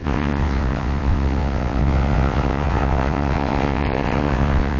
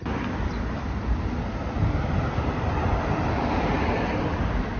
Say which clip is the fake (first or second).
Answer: first